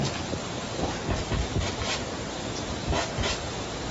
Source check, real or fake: real